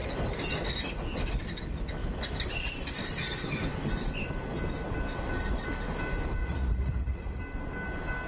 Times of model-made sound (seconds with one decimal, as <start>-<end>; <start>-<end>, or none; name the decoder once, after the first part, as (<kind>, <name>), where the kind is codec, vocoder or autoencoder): 6.4-7.4 (vocoder, Vocos)